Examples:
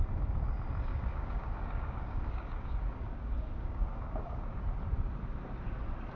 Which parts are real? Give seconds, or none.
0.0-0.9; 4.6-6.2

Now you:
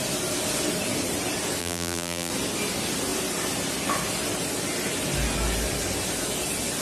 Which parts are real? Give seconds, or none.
0.0-1.6; 2.3-6.8

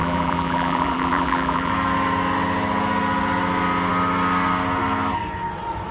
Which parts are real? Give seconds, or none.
1.7-5.9

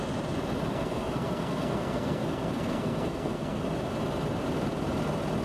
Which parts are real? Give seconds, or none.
0.0-0.7; 3.6-5.4

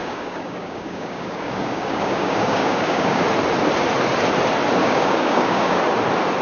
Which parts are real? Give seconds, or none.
3.2-4.8; 5.8-6.4

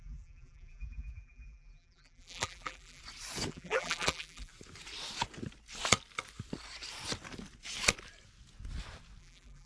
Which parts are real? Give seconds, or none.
3.0-3.5; 4.5-9.2

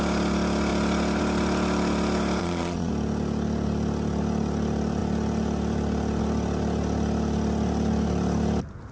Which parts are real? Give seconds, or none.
0.0-2.4; 2.9-8.9